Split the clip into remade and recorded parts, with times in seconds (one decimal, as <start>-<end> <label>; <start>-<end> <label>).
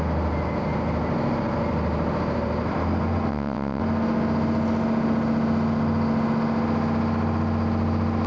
0.0-3.3 recorded; 3.3-3.8 remade; 3.8-8.3 recorded